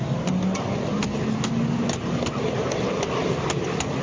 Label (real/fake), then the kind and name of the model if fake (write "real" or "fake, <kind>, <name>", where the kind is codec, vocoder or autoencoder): real